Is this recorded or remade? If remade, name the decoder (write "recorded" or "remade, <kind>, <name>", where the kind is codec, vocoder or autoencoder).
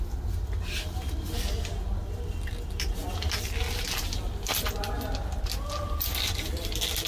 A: recorded